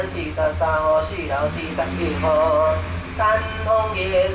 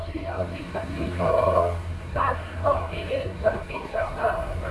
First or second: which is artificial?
second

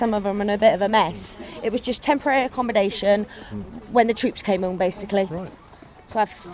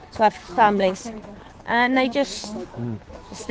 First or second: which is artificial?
second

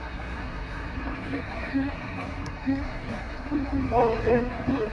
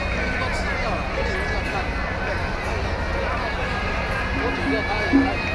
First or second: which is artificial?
first